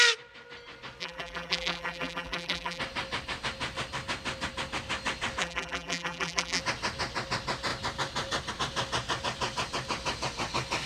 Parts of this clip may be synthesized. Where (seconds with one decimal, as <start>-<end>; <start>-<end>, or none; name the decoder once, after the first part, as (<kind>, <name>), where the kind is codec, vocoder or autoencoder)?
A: 1.0-2.8 (vocoder, BigVGAN v2); 5.4-6.6